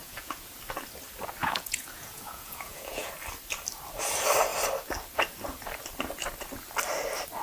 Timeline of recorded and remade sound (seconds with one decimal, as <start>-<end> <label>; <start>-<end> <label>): 0.0-0.5 remade; 0.5-1.4 recorded; 1.4-3.1 remade; 3.1-7.4 recorded